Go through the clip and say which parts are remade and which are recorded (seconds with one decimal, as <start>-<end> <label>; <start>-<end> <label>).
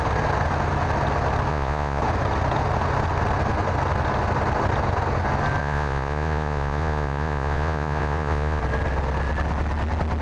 0.0-1.5 recorded; 1.5-2.0 remade; 2.0-5.6 recorded; 5.6-8.6 remade; 8.6-10.2 recorded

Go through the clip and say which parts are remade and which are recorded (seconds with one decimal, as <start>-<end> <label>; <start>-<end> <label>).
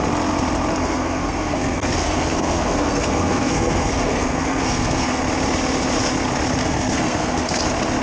0.0-0.8 recorded; 0.8-5.2 remade; 5.2-6.6 recorded; 6.6-7.6 remade; 7.6-8.0 recorded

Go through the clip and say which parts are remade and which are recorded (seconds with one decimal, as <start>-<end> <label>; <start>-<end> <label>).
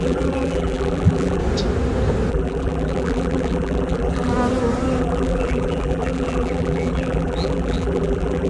0.0-1.4 remade; 1.4-2.3 recorded; 2.3-4.3 remade; 4.3-5.0 recorded; 5.0-8.5 remade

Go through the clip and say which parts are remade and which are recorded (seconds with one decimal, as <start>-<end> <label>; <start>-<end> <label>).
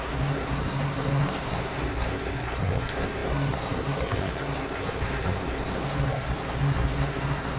0.0-7.6 remade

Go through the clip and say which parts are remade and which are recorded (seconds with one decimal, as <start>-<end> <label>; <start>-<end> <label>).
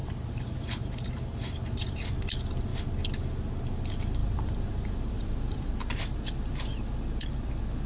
0.0-2.0 remade; 2.0-4.2 recorded; 4.2-5.7 remade; 5.7-7.9 recorded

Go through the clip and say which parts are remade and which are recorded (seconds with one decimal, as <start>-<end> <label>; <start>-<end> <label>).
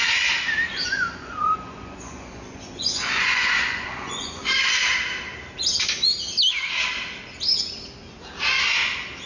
0.0-0.7 recorded; 0.7-4.4 remade; 4.4-9.3 recorded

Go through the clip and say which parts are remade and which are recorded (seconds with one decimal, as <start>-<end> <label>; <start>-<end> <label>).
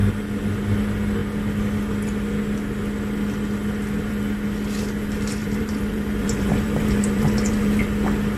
0.0-0.6 remade; 0.6-5.4 recorded; 5.4-7.8 remade; 7.8-8.4 recorded